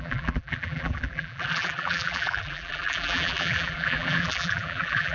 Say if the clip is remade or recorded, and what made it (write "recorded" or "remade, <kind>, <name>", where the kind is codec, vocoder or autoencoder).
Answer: remade, vocoder, BigVGAN v2